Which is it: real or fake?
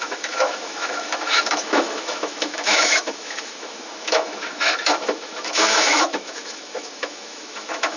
fake